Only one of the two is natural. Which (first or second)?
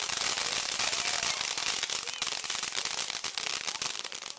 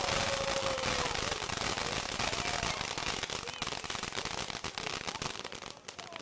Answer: second